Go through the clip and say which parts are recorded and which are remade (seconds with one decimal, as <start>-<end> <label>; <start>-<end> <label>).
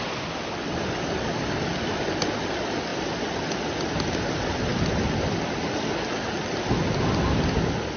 0.0-8.0 recorded